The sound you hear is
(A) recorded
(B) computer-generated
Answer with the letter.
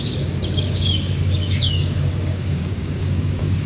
B